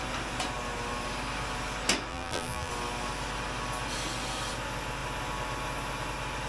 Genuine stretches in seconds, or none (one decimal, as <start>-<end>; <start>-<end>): 0.0-2.1; 2.7-6.5